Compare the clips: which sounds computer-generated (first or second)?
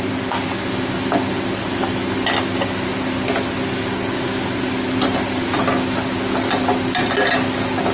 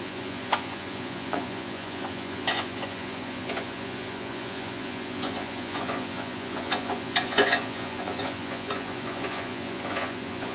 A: second